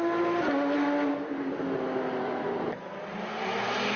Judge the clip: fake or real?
real